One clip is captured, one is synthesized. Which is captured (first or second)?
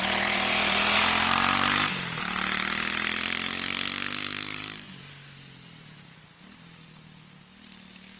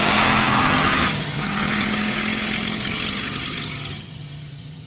first